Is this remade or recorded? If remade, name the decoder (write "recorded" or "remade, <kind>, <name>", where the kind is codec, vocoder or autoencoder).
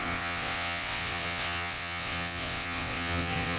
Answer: remade, vocoder, WaveNeXt